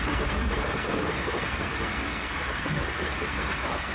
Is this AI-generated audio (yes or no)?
yes